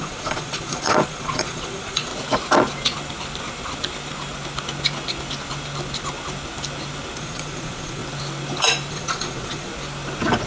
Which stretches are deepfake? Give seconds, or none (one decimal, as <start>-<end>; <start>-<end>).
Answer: 0.0-2.1; 7.2-8.0; 8.9-9.7